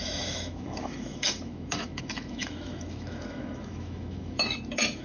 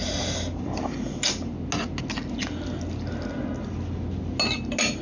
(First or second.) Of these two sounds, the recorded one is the second